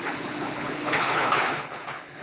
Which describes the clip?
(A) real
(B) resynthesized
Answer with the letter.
B